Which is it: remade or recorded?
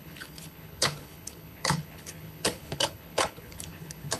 remade